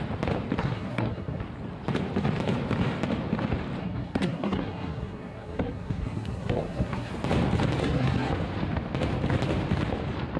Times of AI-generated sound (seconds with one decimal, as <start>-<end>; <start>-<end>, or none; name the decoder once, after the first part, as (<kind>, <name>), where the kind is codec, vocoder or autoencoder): 0.6-1.4 (codec, SNAC); 3.8-7.1; 7.8-8.3